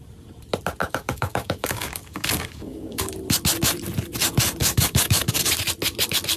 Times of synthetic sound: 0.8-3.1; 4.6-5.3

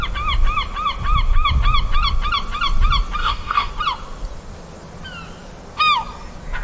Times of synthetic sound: 3.2-3.7

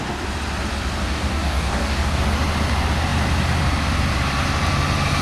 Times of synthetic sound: 1.0-2.2

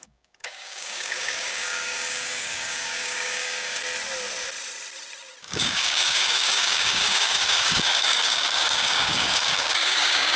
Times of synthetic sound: 0.0-3.8; 5.4-10.4

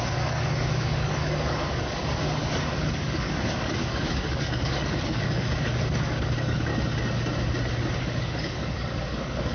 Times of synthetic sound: 0.0-6.7; 8.0-9.5

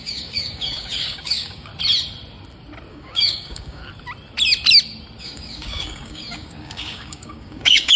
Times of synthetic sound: 0.0-1.7; 2.9-3.8; 5.2-8.0

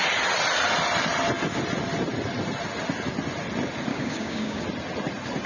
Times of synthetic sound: 3.9-4.6

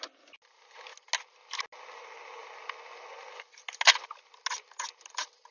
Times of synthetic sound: none